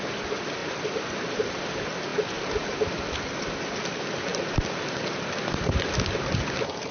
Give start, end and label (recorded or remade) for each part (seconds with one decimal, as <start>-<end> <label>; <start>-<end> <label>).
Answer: 0.0-6.9 recorded